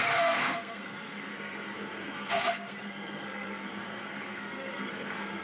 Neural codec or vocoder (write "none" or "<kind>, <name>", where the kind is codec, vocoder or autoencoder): codec, SNAC